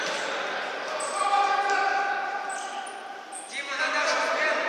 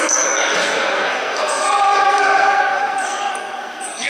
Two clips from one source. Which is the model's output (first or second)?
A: second